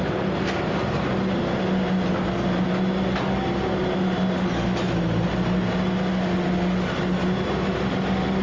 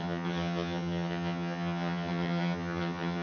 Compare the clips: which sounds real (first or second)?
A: first